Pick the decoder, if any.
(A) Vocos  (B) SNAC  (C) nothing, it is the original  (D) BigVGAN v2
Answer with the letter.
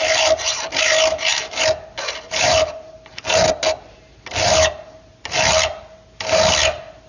C